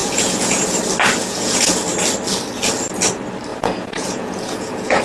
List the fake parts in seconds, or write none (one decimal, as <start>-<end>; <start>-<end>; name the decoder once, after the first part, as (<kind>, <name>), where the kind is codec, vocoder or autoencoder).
0.0-0.6 (vocoder, Vocos); 1.2-1.8; 3.5-5.0